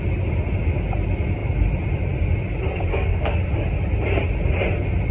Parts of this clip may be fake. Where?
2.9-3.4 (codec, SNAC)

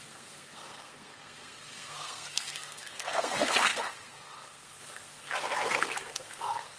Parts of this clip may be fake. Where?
0.0-6.8 (codec, SNAC)

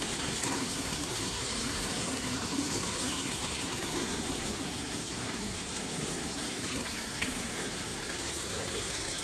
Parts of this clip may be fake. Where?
0.0-9.2 (codec, SNAC)

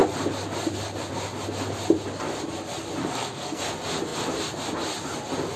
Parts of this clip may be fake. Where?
3.0-3.6 (codec, SNAC)